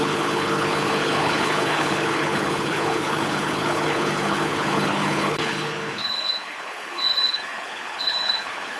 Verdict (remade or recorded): remade